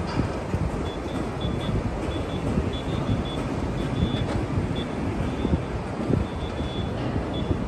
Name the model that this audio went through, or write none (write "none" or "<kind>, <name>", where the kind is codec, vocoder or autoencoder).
none